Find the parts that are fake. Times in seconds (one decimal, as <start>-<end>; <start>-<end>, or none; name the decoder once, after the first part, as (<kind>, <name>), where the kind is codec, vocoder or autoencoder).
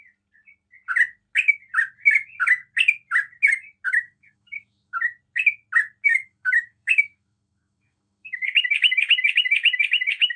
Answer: 3.9-5.0 (autoencoder, DAC-VAE); 6.1-10.4